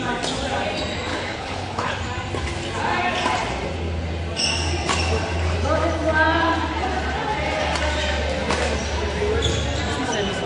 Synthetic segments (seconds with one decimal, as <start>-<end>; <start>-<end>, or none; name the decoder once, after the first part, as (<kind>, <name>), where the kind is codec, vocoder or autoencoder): 1.1-2.0 (codec, HILCodec)